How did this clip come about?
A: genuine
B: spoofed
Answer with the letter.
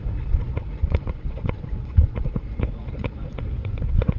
B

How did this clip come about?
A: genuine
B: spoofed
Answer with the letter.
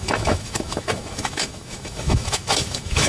B